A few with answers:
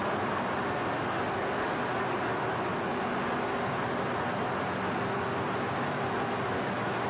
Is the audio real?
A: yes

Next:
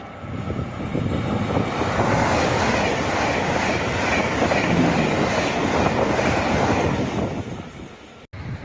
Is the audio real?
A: yes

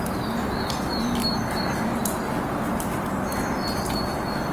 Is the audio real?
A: yes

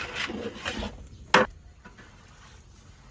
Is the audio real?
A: yes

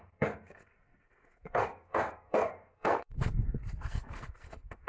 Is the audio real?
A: no